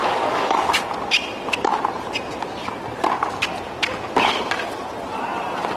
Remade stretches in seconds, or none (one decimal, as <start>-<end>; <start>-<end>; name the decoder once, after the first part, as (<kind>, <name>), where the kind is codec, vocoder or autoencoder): 0.0-0.7 (codec, DAC)